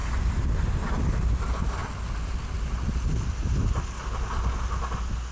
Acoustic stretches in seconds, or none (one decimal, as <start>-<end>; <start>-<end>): 1.0-5.3